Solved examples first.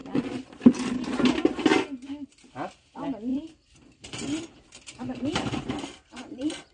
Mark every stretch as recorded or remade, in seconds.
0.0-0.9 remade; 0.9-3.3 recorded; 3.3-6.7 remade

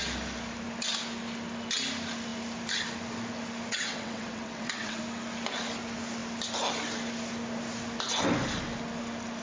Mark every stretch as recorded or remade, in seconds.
0.0-3.7 recorded; 3.7-5.0 remade; 5.0-9.4 recorded

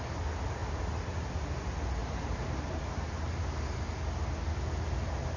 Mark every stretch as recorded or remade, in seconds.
0.0-0.6 recorded; 0.6-1.3 remade; 1.3-2.0 recorded; 2.0-3.8 remade; 3.8-5.4 recorded